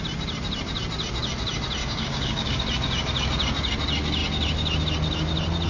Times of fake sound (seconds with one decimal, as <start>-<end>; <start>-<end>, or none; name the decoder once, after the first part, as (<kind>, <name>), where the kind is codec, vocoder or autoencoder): 1.8-2.6 (codec, DAC)